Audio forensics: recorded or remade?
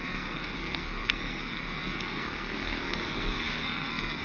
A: remade